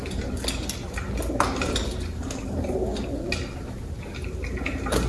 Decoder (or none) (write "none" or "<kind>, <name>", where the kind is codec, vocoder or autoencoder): none